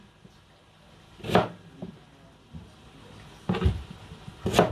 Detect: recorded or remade recorded